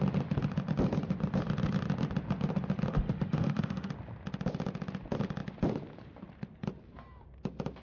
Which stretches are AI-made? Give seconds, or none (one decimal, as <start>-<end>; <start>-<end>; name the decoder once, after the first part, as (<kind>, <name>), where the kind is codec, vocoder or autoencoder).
2.9-3.9 (autoencoder, DAC-VAE)

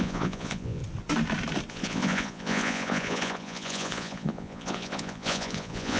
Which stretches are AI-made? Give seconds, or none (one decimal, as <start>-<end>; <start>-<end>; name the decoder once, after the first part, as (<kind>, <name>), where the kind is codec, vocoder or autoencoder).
0.0-0.8 (vocoder, Vocos); 1.7-6.0

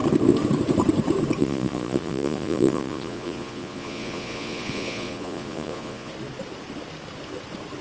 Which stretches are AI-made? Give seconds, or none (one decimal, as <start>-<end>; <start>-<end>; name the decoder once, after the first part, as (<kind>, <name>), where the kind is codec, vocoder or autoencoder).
1.4-6.1 (vocoder, Vocos)